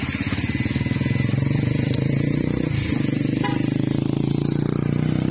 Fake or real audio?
real